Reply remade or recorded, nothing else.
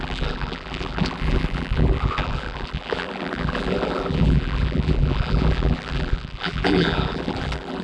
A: remade